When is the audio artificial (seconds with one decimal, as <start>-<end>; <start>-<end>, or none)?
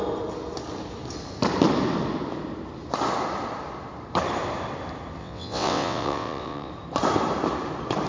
5.2-6.7